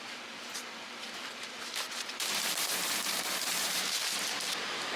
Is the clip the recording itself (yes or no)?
no